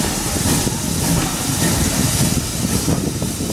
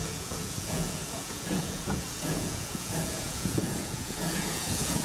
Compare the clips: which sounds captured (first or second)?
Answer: first